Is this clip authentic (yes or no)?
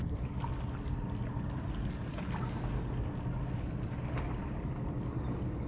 yes